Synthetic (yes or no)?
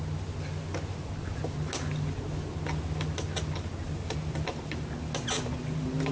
no